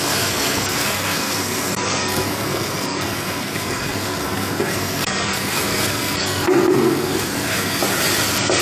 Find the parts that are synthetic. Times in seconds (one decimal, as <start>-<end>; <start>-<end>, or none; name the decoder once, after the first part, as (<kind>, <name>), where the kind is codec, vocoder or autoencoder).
0.0-7.8 (codec, SNAC)

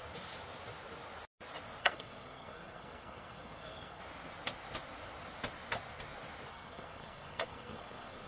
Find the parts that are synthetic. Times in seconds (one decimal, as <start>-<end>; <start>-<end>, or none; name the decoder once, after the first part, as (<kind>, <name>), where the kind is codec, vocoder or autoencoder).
1.8-4.0 (codec, SNAC); 6.5-8.3

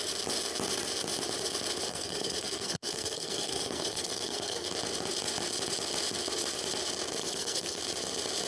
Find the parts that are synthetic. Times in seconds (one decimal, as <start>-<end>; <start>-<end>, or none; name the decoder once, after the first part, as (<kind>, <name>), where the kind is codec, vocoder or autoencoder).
1.9-4.7 (codec, SNAC); 7.2-7.8

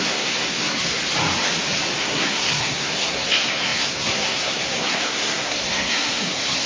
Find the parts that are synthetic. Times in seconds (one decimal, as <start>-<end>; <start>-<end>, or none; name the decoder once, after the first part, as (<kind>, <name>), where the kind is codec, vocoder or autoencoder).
0.0-1.0 (codec, SNAC); 2.0-6.7

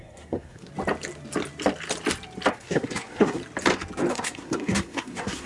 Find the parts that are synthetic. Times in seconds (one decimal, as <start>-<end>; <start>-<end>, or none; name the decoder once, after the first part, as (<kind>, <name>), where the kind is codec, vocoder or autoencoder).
0.0-0.7 (codec, SNAC); 2.5-3.4; 4.1-5.5

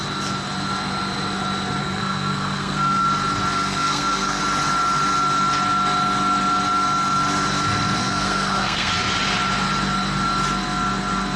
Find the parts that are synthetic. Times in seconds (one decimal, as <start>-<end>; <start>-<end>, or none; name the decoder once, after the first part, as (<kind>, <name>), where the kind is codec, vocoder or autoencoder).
1.8-3.0 (codec, SNAC); 3.5-4.4; 8.0-8.9

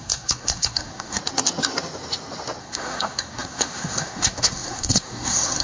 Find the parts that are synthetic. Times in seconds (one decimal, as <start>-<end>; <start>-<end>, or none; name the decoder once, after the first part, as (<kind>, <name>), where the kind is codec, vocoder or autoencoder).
0.0-1.2 (codec, SNAC); 2.6-5.6